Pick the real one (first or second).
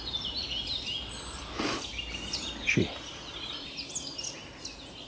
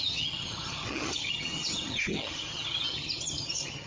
first